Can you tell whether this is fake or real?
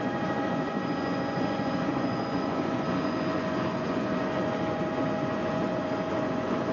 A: fake